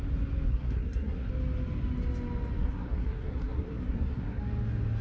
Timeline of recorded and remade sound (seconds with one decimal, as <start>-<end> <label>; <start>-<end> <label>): 0.0-0.5 recorded; 0.5-1.3 remade; 1.3-2.6 recorded; 2.6-4.4 remade; 4.4-5.0 recorded